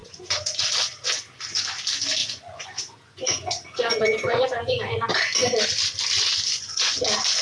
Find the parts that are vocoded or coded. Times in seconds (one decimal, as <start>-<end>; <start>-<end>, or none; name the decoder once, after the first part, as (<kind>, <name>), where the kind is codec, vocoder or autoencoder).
0.0-0.5 (vocoder, Vocos); 2.2-5.1; 6.5-7.0